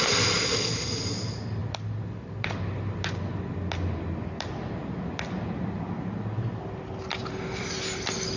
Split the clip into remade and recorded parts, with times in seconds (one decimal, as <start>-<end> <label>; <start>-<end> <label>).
0.0-8.4 recorded